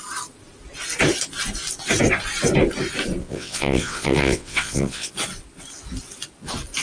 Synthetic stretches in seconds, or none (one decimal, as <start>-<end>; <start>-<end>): 3.2-5.1